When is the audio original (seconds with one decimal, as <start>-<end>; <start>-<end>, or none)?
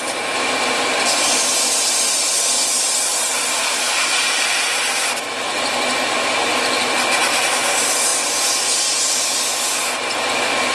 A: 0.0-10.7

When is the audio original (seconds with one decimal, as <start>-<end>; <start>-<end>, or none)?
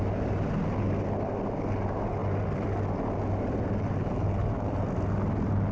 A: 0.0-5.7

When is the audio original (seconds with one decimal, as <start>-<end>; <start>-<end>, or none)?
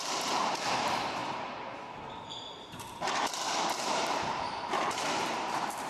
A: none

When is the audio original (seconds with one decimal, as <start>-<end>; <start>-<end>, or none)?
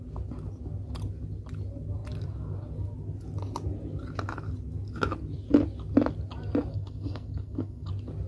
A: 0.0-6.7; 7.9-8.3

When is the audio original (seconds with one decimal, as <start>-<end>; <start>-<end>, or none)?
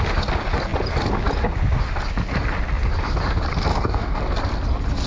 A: 0.0-3.7; 4.2-5.1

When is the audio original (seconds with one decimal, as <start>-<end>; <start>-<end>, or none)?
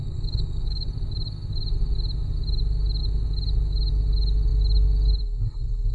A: 0.9-5.9